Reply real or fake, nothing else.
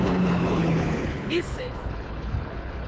fake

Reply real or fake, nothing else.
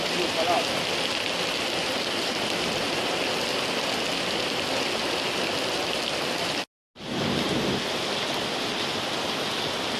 real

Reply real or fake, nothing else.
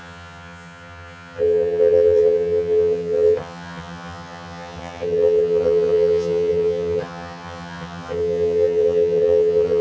fake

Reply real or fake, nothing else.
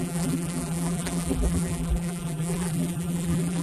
fake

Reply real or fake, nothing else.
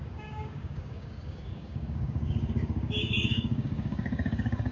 fake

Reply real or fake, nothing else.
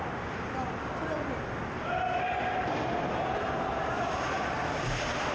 real